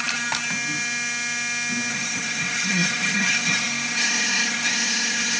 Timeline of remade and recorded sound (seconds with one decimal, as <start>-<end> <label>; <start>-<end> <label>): 0.0-1.9 recorded; 1.9-5.4 remade